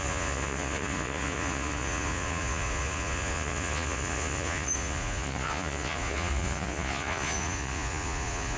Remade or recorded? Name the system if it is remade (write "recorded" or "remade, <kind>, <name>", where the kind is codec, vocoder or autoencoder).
remade, vocoder, Vocos